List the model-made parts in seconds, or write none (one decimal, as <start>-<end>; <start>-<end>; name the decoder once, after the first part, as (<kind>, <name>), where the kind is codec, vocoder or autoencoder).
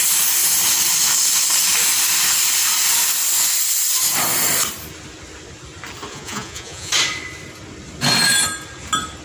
6.1-6.9 (vocoder, Vocos)